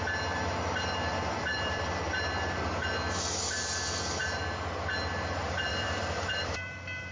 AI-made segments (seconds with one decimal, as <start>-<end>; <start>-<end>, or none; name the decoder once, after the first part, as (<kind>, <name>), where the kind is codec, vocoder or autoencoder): 1.1-1.8 (vocoder, BigVGAN v2); 5.7-7.1